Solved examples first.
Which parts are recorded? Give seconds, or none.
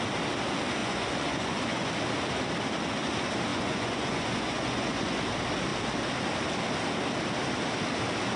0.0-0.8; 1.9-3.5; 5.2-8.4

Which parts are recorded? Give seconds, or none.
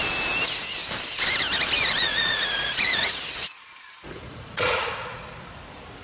0.0-1.8; 5.3-6.0